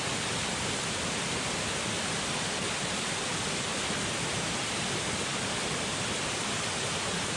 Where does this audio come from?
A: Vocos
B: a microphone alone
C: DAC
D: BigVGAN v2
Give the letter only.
B